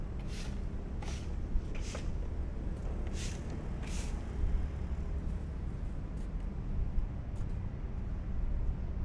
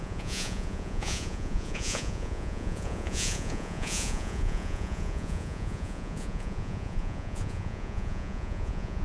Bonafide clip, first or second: first